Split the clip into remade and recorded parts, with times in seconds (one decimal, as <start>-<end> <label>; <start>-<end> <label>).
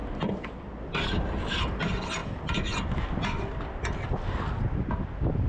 0.0-0.7 remade; 0.7-5.5 recorded